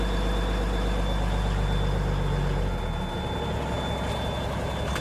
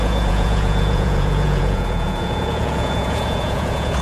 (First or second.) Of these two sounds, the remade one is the second